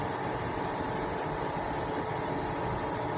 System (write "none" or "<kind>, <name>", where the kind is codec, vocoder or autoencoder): none